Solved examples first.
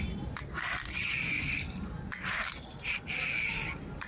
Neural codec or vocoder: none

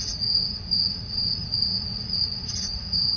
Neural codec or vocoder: vocoder, Vocos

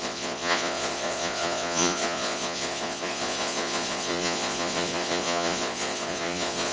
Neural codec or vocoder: vocoder, Vocos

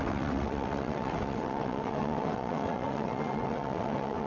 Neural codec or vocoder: vocoder, WaveNeXt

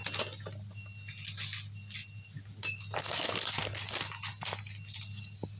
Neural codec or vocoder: none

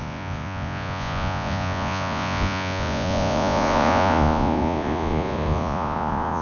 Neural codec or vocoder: vocoder, Vocos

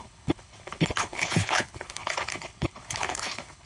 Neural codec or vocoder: codec, HILCodec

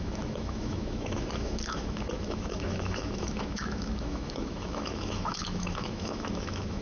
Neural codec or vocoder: autoencoder, DAC-VAE